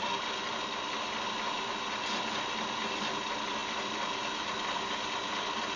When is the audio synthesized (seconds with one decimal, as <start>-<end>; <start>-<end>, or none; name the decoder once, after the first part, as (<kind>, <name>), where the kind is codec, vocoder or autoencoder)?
none